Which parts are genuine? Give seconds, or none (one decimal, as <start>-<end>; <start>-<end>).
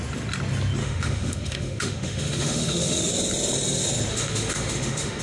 0.0-0.8; 3.1-4.1